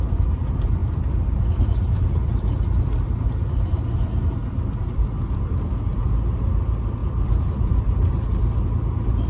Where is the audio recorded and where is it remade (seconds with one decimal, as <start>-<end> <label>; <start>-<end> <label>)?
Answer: 0.0-0.8 recorded; 0.8-3.9 remade; 3.9-4.4 recorded; 4.4-5.7 remade; 5.7-7.0 recorded; 7.0-8.1 remade; 8.1-9.3 recorded